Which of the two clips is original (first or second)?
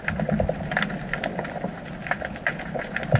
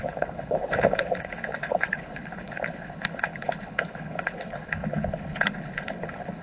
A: first